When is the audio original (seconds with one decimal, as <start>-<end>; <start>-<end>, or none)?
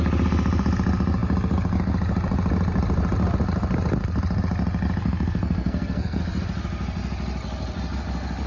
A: 0.0-5.0; 6.2-8.5